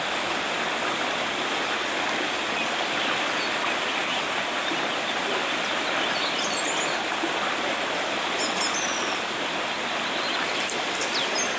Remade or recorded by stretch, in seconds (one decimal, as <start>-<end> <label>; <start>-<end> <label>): 0.0-11.6 recorded